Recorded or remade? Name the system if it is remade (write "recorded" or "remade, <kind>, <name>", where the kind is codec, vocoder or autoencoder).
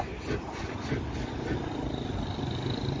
recorded